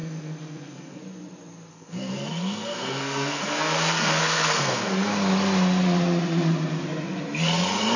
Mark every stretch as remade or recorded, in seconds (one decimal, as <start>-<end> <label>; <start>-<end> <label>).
0.0-1.0 remade; 1.0-1.7 recorded; 1.7-5.1 remade; 5.1-8.0 recorded